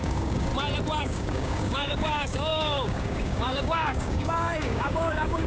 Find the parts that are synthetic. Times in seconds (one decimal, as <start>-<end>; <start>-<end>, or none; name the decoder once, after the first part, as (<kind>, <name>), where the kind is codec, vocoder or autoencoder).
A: 0.0-0.5 (codec, DAC); 1.0-5.5